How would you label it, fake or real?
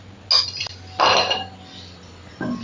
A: real